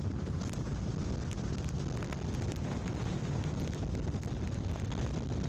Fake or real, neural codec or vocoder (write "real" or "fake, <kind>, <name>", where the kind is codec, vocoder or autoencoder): real